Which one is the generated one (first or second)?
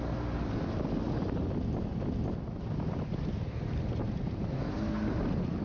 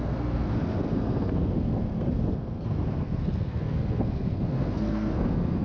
second